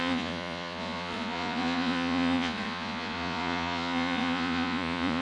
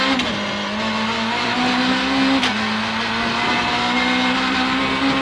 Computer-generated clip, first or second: first